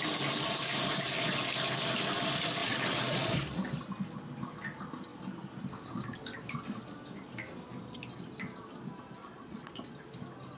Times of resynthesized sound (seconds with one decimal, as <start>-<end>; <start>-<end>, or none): 2.6-3.3; 9.2-9.8